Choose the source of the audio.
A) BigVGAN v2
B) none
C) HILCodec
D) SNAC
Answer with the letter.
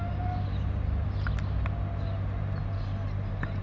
B